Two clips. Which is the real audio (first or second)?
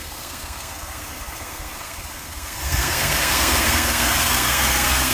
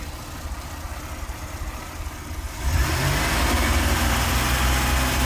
second